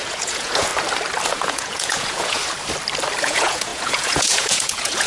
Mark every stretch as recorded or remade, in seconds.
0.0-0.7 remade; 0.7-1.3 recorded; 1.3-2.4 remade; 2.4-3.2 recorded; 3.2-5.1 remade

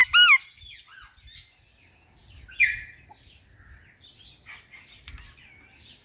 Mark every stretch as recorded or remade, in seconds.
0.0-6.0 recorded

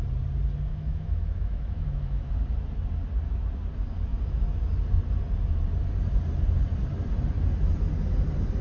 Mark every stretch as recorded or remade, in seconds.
0.0-0.7 recorded; 0.7-2.3 remade; 2.3-8.6 recorded

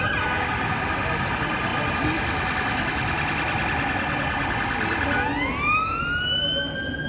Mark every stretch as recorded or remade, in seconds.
0.0-7.1 recorded